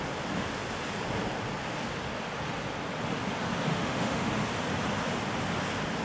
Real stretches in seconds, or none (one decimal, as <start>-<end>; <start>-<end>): 0.0-3.7; 4.3-6.0